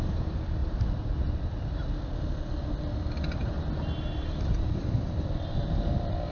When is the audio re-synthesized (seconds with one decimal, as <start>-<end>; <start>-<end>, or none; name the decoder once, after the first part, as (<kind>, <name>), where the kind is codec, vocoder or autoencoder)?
none